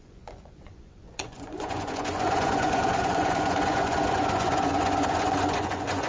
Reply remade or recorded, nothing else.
remade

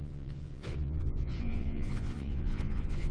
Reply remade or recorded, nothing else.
remade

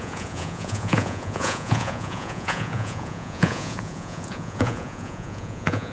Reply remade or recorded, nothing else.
remade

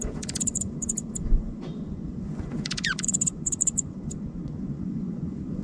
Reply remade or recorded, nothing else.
remade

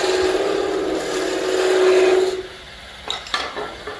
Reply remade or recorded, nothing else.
recorded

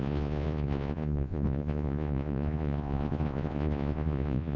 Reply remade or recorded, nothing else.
remade